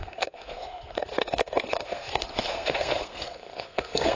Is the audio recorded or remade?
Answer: remade